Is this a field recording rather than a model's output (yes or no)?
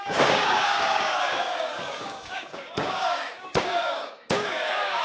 no